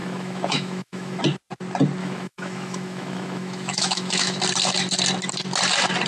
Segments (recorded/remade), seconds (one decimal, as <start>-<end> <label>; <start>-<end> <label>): 0.0-1.2 remade; 1.2-2.0 recorded; 2.0-4.4 remade; 4.4-6.1 recorded

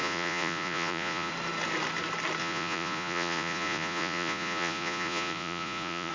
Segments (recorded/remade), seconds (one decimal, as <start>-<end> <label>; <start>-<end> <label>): 0.0-1.3 remade; 1.3-2.4 recorded; 2.4-6.1 remade

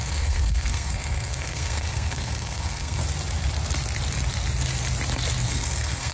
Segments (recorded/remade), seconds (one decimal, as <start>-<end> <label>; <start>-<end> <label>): 0.0-3.0 remade; 3.0-5.5 recorded; 5.5-6.1 remade

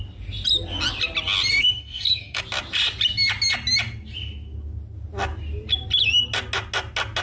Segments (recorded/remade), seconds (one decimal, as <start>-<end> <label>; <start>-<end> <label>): 0.0-1.5 recorded; 1.5-2.4 remade; 2.4-7.2 recorded

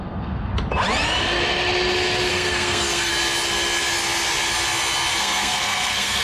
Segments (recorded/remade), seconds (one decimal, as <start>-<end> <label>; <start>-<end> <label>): 0.0-0.5 remade; 0.5-2.3 recorded; 2.3-3.1 remade; 3.1-5.2 recorded; 5.2-6.2 remade